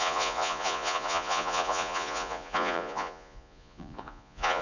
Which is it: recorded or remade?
remade